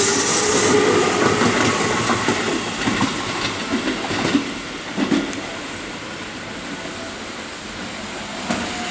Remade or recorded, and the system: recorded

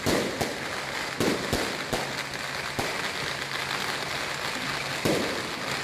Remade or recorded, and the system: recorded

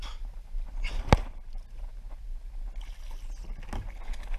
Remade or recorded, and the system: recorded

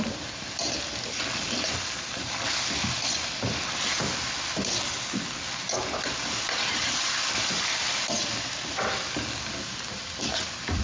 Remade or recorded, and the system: recorded